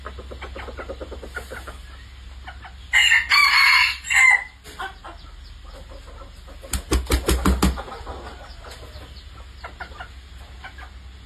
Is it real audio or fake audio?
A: real